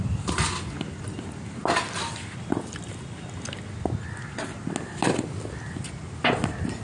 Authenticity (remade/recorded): recorded